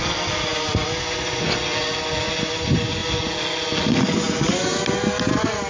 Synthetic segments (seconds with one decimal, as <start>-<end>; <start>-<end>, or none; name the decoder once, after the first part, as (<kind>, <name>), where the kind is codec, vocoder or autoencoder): none